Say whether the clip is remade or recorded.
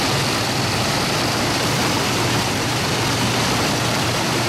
remade